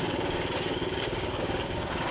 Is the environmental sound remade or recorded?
remade